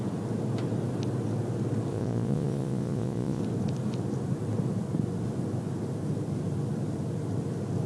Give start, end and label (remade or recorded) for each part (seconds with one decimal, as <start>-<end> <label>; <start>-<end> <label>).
0.0-1.9 recorded; 1.9-3.4 remade; 3.4-7.9 recorded